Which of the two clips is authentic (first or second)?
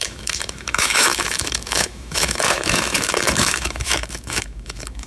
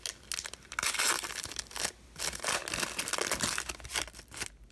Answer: second